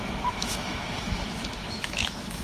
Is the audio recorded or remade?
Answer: remade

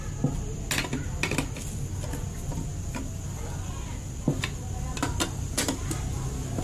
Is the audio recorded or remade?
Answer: recorded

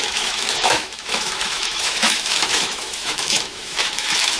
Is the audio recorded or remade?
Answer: remade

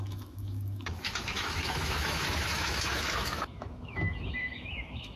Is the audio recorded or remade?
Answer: remade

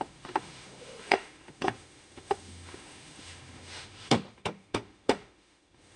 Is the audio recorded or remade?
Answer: remade